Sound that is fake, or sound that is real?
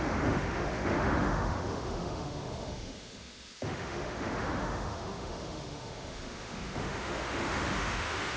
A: fake